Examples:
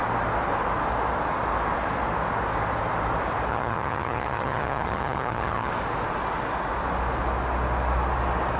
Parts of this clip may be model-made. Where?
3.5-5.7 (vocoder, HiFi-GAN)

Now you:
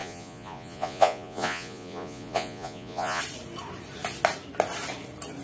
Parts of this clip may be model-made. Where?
0.0-3.2 (vocoder, Vocos)

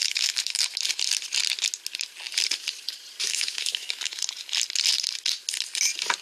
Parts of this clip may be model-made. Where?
0.0-0.6 (autoencoder, DAC-VAE); 3.3-4.1

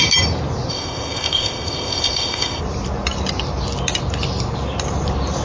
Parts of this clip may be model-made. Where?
0.7-2.6 (codec, ZipCodec)

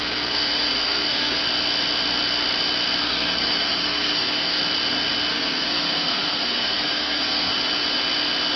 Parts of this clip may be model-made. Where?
0.0-1.4 (codec, SNAC); 3.0-4.6; 5.3-7.5

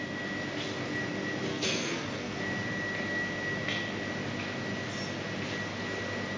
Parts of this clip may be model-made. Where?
1.5-2.4 (codec, SNAC)

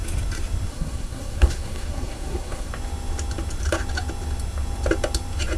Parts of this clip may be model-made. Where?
0.7-2.7 (codec, SNAC)